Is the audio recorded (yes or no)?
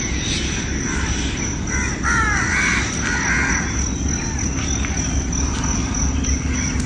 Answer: yes